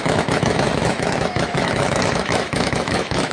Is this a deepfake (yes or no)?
yes